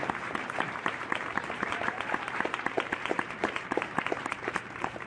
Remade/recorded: remade